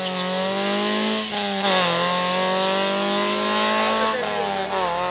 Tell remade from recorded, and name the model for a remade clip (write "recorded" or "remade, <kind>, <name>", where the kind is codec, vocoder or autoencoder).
recorded